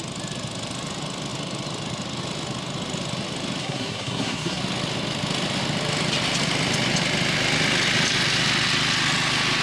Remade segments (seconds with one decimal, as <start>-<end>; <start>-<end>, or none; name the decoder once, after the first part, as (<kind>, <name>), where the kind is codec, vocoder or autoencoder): 3.6-4.6 (codec, SNAC)

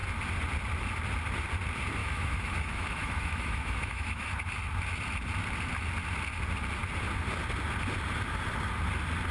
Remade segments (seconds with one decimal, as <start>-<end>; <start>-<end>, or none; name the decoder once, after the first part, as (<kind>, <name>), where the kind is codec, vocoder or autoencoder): 2.0-4.3 (autoencoder, DAC-VAE)

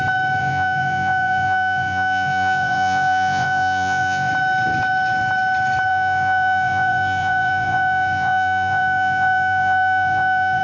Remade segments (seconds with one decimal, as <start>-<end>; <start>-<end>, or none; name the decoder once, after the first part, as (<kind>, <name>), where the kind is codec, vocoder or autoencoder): 0.4-4.3 (vocoder, Vocos); 5.9-10.6

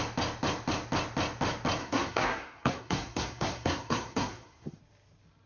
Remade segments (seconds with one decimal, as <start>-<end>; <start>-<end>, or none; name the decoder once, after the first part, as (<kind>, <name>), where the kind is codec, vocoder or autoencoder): 1.8-4.8 (codec, SNAC)